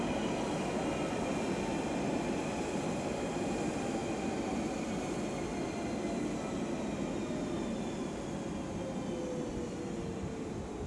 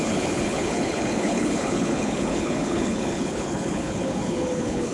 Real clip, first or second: first